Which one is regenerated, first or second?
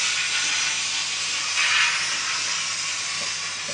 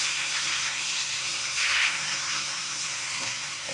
second